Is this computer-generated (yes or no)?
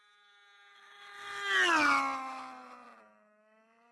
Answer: no